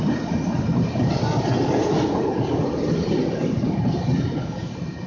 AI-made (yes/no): no